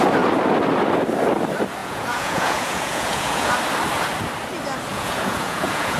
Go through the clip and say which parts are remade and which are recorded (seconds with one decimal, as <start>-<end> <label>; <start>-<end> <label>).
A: 0.0-1.8 recorded; 1.8-3.5 remade; 3.5-4.9 recorded; 4.9-6.0 remade